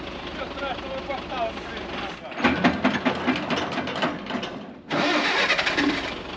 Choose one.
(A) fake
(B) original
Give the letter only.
B